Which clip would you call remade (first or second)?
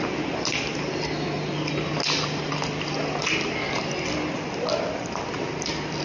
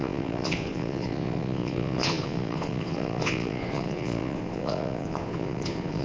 second